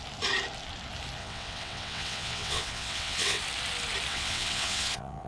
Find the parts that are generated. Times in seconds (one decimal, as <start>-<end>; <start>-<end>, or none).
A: 1.2-3.4; 4.1-5.3